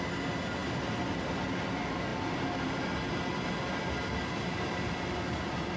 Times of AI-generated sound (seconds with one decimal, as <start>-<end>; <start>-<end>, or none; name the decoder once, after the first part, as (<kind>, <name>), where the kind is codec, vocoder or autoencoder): none